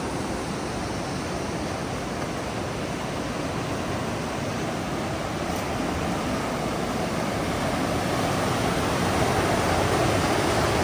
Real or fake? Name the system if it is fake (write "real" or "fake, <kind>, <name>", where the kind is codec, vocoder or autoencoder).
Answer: real